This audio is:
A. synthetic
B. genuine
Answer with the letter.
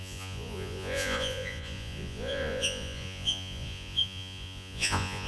A